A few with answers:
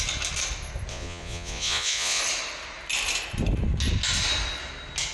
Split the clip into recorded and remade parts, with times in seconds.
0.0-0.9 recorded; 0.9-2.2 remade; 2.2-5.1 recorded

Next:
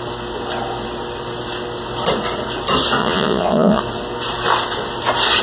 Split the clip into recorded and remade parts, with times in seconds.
0.0-3.0 recorded; 3.0-3.8 remade; 3.8-5.4 recorded

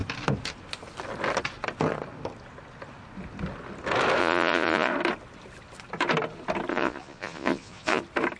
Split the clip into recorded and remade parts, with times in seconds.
0.0-4.2 recorded; 4.2-4.9 remade; 4.9-6.7 recorded; 6.7-8.0 remade; 8.0-8.4 recorded

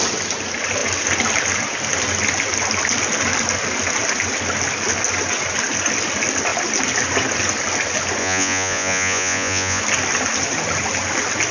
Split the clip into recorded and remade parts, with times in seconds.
0.0-8.2 recorded; 8.2-9.8 remade; 9.8-11.5 recorded